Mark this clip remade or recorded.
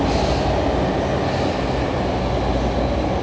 recorded